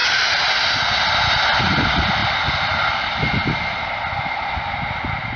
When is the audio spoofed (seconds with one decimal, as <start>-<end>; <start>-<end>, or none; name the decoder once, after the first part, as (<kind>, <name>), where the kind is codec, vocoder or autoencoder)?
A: none